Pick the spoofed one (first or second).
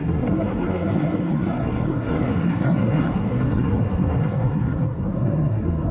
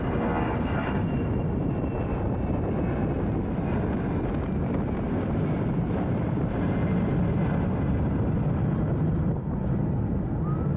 first